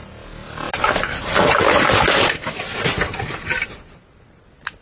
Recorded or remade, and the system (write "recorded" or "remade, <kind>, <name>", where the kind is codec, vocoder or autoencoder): recorded